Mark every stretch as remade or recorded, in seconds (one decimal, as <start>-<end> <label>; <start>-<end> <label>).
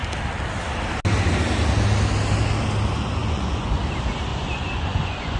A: 0.0-3.2 recorded; 3.2-3.8 remade; 3.8-4.3 recorded; 4.3-5.4 remade